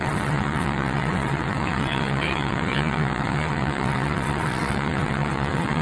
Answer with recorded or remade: remade